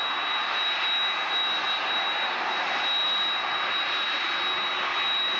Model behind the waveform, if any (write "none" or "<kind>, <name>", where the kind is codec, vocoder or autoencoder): none